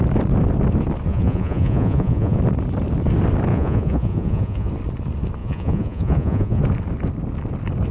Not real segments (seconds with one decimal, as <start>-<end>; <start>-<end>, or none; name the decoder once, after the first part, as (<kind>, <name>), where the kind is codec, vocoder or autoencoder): 1.1-2.4 (vocoder, Vocos); 3.5-4.7; 5.4-6.6